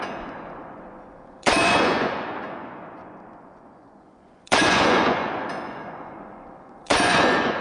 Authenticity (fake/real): fake